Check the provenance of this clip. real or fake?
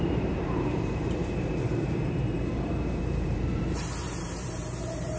fake